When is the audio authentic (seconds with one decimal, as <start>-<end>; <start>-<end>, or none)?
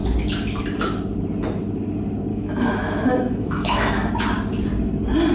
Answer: 0.0-2.3; 4.1-5.3